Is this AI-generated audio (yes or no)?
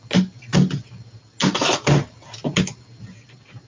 no